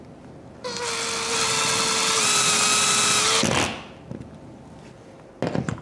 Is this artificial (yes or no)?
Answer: no